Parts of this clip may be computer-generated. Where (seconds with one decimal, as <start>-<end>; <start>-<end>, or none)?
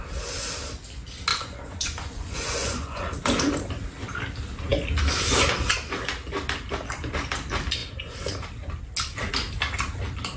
1.3-3.1